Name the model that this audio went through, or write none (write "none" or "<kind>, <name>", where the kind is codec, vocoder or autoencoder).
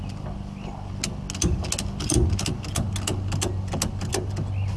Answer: none